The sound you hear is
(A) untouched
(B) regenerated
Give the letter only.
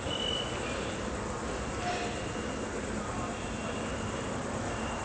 A